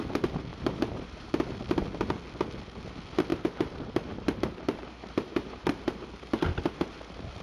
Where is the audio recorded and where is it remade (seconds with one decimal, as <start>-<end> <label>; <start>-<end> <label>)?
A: 0.0-0.5 recorded; 0.5-1.3 remade; 1.3-3.3 recorded; 3.3-7.4 remade